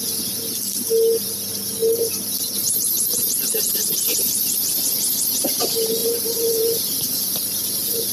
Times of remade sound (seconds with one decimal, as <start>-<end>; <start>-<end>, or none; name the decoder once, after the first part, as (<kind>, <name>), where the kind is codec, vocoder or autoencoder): 3.8-4.9 (vocoder, BigVGAN v2); 6.0-8.1